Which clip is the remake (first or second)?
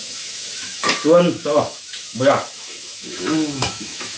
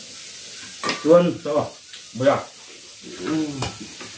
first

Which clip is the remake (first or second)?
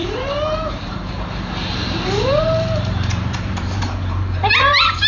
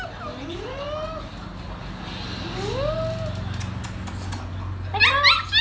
first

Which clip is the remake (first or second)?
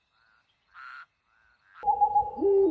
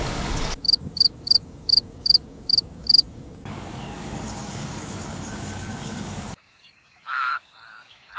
second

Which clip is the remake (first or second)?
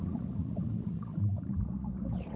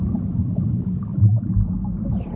first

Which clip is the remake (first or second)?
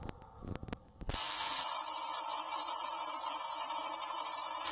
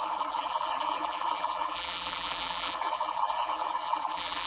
second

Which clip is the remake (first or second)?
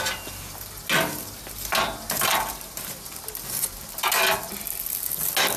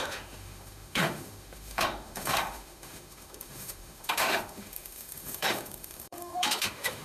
second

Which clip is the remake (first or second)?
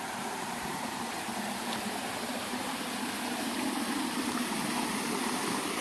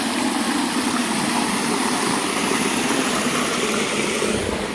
first